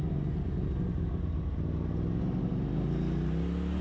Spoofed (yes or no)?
no